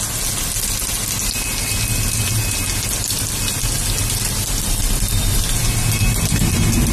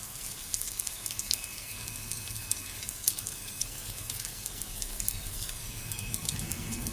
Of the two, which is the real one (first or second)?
first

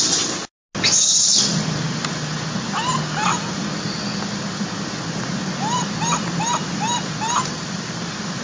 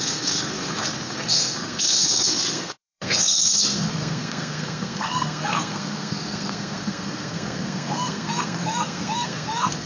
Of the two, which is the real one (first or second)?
first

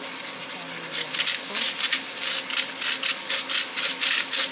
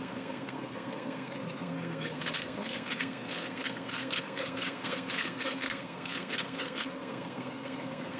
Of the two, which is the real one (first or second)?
first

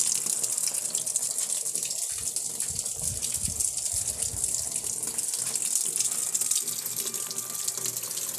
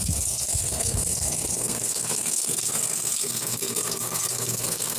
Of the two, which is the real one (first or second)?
first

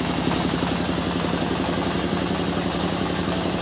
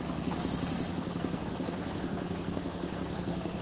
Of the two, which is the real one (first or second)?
first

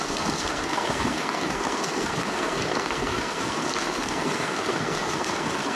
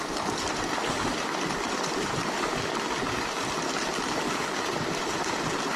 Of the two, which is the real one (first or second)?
second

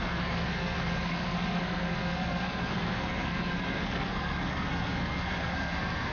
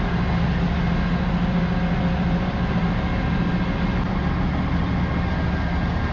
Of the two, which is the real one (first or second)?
second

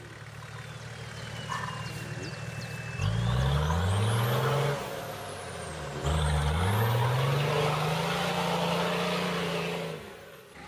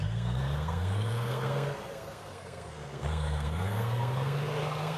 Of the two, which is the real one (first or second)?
first